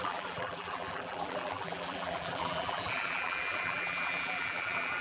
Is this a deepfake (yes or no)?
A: yes